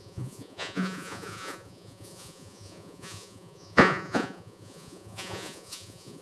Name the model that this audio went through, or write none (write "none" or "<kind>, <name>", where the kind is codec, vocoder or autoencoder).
vocoder, Vocos